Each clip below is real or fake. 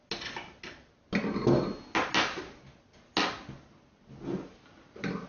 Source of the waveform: real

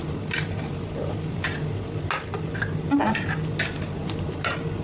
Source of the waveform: real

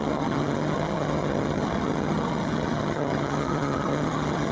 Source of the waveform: fake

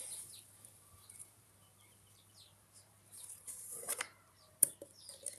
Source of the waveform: fake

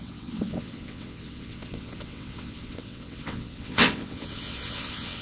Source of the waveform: fake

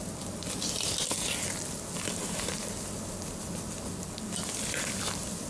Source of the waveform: real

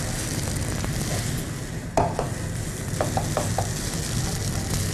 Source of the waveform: real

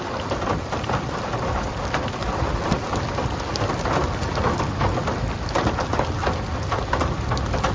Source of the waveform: real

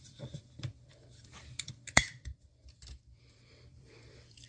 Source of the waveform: fake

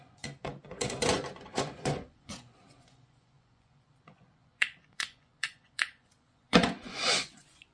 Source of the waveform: fake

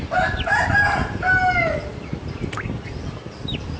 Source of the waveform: real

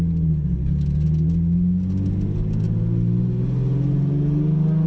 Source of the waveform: real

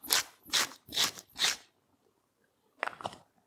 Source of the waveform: fake